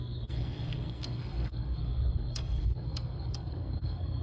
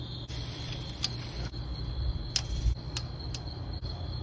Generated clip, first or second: first